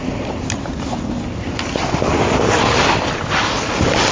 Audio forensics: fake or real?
real